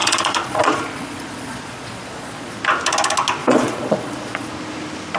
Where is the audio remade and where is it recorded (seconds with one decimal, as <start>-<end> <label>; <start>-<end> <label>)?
0.0-2.6 remade; 2.6-3.4 recorded; 3.4-4.5 remade; 4.5-5.2 recorded